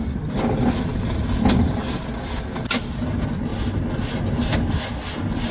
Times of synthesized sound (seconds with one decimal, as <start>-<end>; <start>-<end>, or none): none